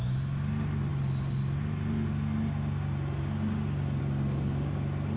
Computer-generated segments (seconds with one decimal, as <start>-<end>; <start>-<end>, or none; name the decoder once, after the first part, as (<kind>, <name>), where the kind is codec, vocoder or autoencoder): none